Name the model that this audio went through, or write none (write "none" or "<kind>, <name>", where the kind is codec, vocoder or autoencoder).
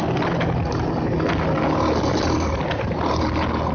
none